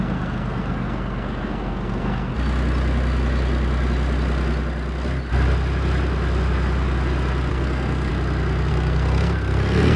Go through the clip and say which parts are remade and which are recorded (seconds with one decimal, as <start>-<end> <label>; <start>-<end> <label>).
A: 0.0-2.3 remade; 2.3-7.5 recorded; 7.5-8.1 remade; 8.1-8.7 recorded; 8.7-10.0 remade